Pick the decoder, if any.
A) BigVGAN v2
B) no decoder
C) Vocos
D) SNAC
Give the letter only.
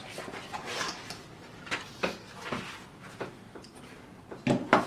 B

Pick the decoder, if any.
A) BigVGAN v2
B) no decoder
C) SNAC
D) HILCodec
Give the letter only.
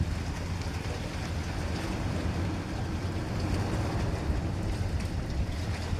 B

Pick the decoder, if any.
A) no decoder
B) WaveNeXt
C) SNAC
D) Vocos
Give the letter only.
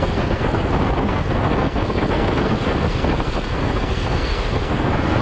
C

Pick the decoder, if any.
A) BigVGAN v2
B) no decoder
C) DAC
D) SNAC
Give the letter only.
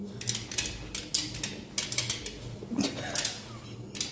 B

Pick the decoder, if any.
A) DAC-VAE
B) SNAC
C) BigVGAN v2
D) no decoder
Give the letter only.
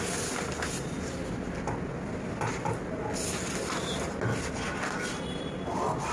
D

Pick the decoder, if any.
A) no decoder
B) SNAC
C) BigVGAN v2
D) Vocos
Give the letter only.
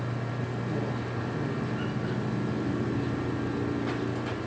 A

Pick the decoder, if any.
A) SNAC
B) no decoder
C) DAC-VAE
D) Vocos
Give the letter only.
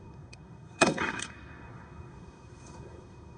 A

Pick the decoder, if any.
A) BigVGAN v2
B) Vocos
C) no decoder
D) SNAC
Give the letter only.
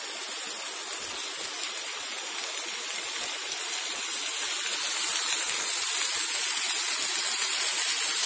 C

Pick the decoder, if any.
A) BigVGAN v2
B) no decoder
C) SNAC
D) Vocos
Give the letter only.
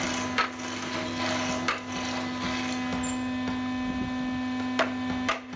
B